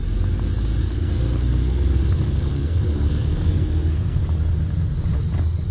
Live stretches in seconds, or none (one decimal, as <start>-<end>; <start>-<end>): 0.0-0.8; 4.2-5.7